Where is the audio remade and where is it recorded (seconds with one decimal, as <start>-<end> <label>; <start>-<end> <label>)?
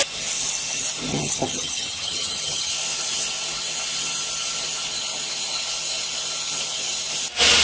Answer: 0.0-1.1 recorded; 1.1-2.7 remade; 2.7-7.6 recorded